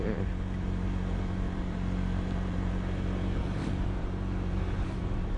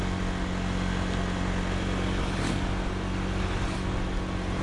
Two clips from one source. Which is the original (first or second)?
second